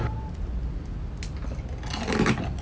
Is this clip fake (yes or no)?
no